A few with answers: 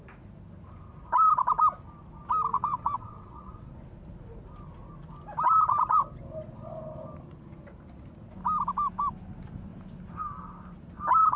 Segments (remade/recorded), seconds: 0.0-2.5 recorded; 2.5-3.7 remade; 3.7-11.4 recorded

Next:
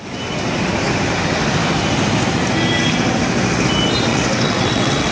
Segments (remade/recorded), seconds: 0.0-4.1 recorded; 4.1-5.1 remade

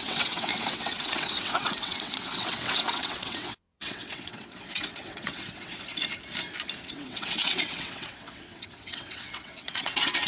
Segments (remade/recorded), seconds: 0.0-6.0 remade; 6.0-6.9 recorded; 6.9-10.3 remade

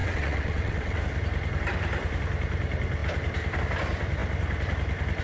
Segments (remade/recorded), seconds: 0.0-1.0 remade; 1.0-5.2 recorded

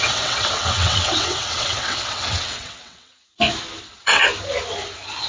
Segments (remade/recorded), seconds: 0.0-3.2 remade; 3.2-3.8 recorded; 3.8-4.2 remade; 4.2-5.3 recorded

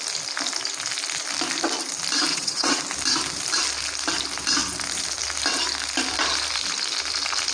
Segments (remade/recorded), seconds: 0.0-2.3 recorded; 2.3-2.8 remade; 2.8-7.5 recorded

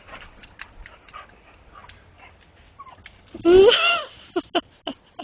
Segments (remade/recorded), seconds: 0.0-5.2 recorded